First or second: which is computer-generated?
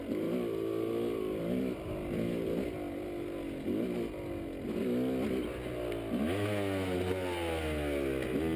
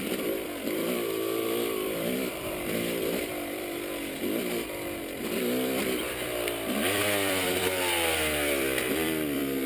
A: second